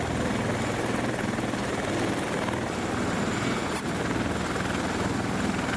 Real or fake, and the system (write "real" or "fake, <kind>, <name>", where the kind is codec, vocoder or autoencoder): real